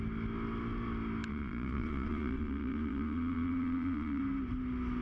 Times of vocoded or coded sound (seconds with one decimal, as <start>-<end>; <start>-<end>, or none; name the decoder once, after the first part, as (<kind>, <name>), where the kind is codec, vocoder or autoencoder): 1.3-4.2 (vocoder, Vocos)